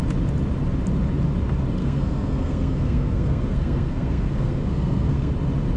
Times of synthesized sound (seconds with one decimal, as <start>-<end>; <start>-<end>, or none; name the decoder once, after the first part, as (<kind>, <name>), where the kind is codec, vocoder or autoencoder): 1.8-5.3 (codec, SNAC)